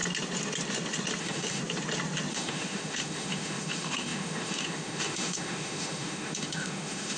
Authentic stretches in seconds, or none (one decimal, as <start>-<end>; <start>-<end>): 0.0-1.2; 1.6-2.3